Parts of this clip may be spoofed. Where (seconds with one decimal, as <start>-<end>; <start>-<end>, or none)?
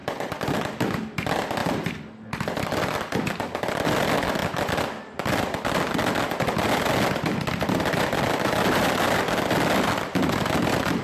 0.0-0.6; 1.6-3.2